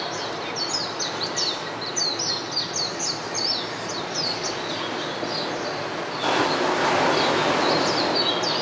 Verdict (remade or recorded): recorded